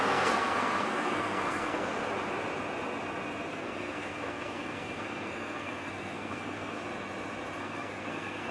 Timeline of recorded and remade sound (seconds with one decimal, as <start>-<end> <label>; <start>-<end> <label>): 0.0-1.9 remade; 1.9-3.5 recorded; 3.5-6.8 remade; 6.8-7.6 recorded; 7.6-8.5 remade